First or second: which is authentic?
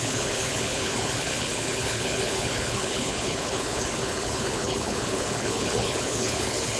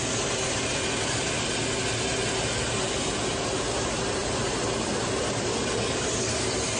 second